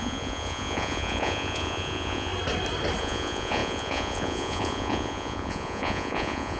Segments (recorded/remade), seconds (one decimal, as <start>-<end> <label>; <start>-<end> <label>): 0.0-2.3 remade; 2.3-3.0 recorded; 3.0-6.6 remade